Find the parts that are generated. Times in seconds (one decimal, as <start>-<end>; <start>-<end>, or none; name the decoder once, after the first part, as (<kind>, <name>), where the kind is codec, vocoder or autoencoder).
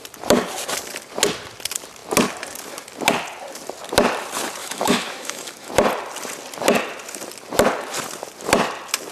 4.6-5.7 (autoencoder, DAC-VAE)